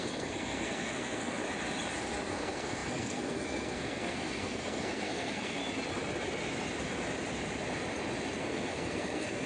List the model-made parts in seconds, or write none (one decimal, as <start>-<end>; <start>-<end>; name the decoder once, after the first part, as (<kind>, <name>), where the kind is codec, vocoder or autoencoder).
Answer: 0.0-1.4 (codec, SNAC); 2.3-5.6; 8.4-9.5